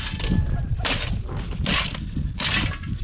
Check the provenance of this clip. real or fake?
real